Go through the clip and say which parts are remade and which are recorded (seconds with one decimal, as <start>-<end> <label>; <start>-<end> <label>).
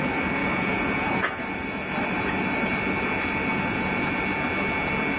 0.0-0.4 recorded; 0.4-1.4 remade; 1.4-3.5 recorded; 3.5-4.2 remade; 4.2-5.2 recorded